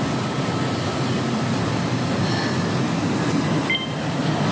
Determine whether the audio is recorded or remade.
recorded